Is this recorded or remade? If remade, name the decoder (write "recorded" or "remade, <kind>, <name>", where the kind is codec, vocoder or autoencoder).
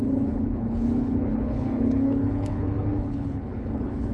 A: remade, codec, HILCodec